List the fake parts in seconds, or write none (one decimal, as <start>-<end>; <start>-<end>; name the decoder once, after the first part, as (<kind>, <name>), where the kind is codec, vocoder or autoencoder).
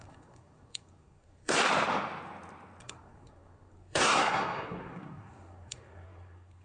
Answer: 0.0-1.6 (codec, SNAC); 2.8-6.6